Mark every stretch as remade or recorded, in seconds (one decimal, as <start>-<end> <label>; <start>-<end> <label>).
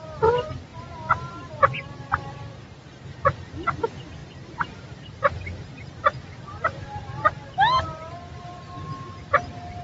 0.0-0.7 recorded; 0.7-1.5 remade; 1.5-4.2 recorded; 4.2-5.8 remade; 5.8-9.8 recorded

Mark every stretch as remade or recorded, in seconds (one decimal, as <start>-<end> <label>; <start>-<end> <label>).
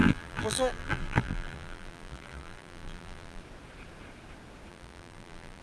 0.0-3.4 remade; 3.4-4.7 recorded; 4.7-5.6 remade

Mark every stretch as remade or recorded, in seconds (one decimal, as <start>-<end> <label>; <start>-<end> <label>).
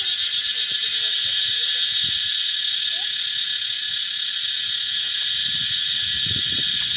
0.0-5.4 recorded; 5.4-7.0 remade